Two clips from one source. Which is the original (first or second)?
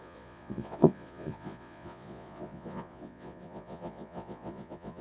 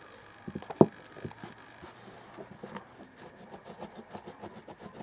second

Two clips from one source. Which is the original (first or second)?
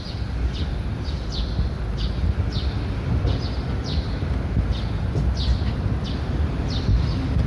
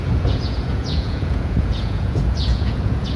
first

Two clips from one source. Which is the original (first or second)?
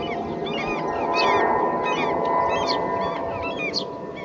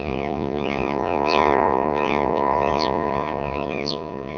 first